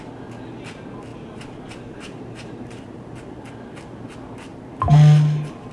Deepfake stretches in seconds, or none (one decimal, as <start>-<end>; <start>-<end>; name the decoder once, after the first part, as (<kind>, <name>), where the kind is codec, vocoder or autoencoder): 1.1-3.4 (vocoder, BigVGAN v2)